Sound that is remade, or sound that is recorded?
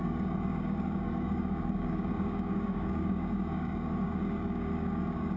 remade